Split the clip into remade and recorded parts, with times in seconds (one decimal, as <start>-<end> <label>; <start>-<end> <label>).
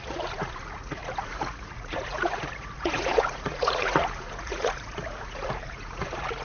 0.0-6.4 remade